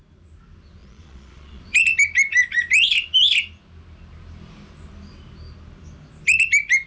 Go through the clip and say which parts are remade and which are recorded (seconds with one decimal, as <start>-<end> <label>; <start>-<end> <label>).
0.0-0.8 recorded; 0.8-1.6 remade; 1.6-6.9 recorded